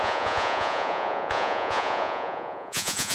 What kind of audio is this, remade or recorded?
remade